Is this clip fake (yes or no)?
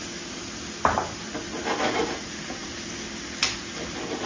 no